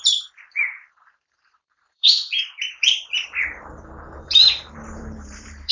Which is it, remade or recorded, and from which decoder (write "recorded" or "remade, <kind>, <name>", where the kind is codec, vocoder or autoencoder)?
remade, vocoder, BigVGAN v2